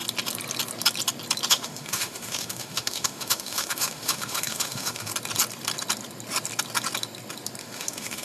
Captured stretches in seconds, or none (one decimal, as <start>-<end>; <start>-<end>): 0.0-1.5; 5.1-7.6